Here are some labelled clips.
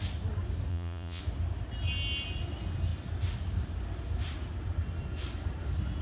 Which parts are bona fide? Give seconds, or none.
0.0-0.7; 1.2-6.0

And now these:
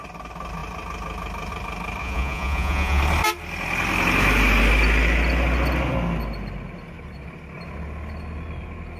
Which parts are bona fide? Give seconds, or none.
0.0-2.0; 3.0-9.0

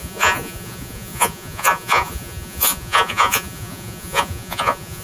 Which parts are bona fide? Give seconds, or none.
none